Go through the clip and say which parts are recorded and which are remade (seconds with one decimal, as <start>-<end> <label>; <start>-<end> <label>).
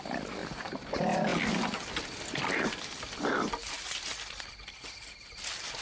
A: 0.0-5.8 recorded